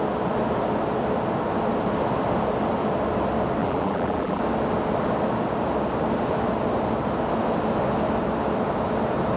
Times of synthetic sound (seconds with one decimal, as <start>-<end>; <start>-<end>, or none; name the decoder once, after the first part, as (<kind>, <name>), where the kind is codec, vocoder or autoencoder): 3.6-4.4 (vocoder, BigVGAN v2)